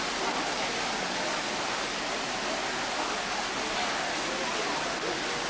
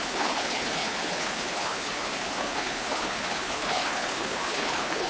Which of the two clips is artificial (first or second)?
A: second